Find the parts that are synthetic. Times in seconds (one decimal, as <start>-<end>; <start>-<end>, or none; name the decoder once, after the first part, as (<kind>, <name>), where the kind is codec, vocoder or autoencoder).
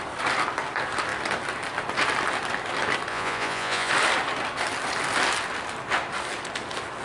3.1-3.9 (vocoder, Vocos)